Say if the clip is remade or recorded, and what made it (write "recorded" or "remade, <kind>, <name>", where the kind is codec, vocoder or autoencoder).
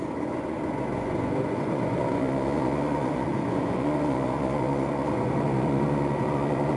remade, vocoder, Vocos